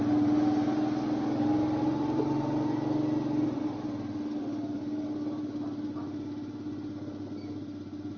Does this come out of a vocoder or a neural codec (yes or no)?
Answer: no